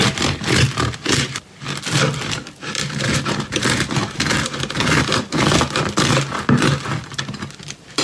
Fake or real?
real